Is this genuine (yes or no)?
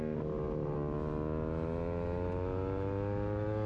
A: yes